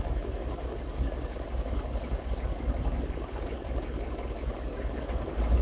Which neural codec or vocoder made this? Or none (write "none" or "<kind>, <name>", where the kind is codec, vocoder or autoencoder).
codec, DAC